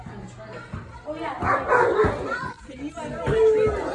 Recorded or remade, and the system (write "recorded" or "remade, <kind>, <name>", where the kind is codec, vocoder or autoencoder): recorded